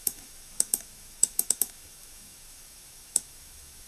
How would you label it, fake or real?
fake